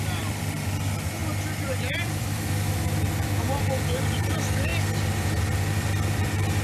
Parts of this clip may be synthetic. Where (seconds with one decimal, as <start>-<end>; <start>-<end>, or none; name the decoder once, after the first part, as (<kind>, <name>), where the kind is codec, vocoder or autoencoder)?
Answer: 0.0-4.7 (vocoder, BigVGAN v2); 5.7-6.6